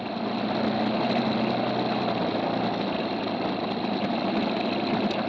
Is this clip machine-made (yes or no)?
no